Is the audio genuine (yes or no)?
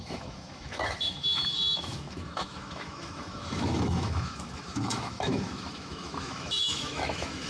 no